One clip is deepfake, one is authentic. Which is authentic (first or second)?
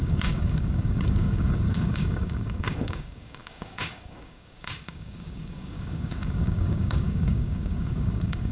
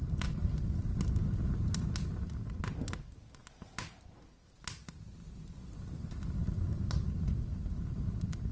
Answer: second